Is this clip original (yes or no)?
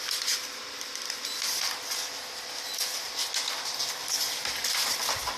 yes